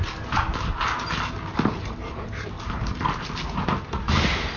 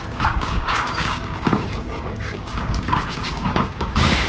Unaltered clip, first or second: first